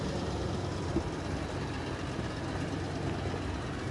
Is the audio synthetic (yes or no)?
no